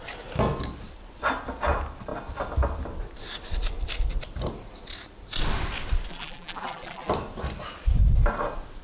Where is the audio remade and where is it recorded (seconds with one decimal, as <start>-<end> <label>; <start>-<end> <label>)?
0.0-6.1 recorded; 6.1-7.1 remade; 7.1-8.8 recorded